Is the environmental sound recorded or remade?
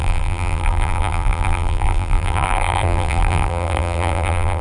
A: remade